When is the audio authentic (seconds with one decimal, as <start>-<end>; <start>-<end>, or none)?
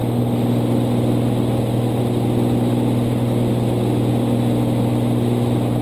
0.0-5.8